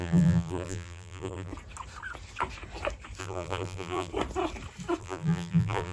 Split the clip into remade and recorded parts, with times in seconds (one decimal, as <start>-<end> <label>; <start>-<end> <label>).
0.0-1.5 remade; 1.5-3.2 recorded; 3.2-4.1 remade; 4.1-5.0 recorded; 5.0-5.9 remade